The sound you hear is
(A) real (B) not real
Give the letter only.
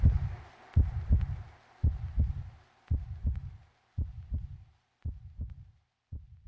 A